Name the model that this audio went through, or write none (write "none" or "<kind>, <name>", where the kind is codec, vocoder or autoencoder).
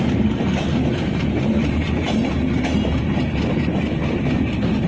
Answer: vocoder, BigVGAN v2